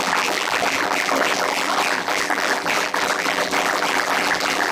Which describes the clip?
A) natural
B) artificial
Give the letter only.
B